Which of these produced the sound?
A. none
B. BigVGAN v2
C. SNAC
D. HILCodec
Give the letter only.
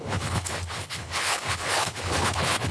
D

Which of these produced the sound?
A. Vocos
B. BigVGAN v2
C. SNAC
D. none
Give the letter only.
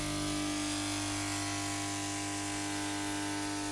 D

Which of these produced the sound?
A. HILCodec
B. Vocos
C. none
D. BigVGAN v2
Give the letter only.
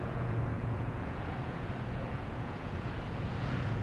B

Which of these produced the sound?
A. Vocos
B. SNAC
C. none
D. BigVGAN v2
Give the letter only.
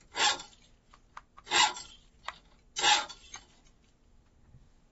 C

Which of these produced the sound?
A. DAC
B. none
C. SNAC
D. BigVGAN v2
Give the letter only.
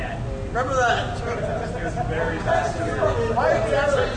B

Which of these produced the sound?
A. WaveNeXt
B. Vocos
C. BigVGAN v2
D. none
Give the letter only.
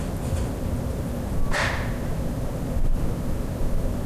D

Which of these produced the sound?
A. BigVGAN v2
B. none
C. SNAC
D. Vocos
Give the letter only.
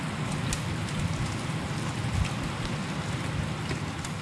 B